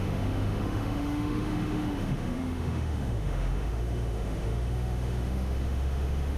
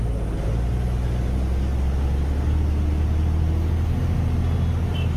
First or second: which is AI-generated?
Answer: first